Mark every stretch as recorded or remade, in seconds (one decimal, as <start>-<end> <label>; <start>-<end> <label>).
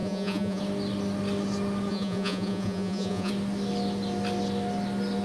0.0-0.6 remade; 0.6-1.9 recorded; 1.9-3.3 remade; 3.3-5.2 recorded